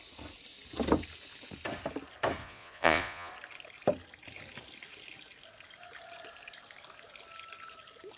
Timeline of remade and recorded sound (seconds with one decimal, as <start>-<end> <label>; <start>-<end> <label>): 0.0-2.4 recorded; 2.4-3.3 remade; 3.3-8.2 recorded